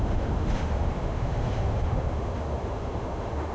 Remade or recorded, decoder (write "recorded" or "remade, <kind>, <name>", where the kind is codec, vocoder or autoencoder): remade, autoencoder, DAC-VAE